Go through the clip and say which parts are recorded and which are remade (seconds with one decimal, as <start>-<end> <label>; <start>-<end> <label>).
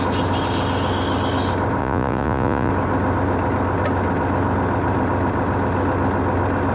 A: 0.0-1.8 recorded; 1.8-2.7 remade; 2.7-6.7 recorded